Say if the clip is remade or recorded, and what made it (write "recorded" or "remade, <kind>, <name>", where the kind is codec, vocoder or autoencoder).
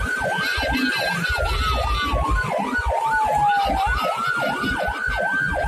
recorded